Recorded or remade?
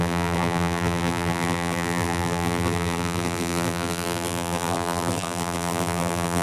remade